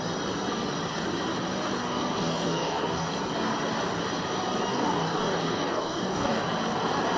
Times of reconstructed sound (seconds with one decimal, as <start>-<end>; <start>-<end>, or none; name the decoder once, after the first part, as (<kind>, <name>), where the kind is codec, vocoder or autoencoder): 1.8-3.2 (codec, DAC); 4.7-6.4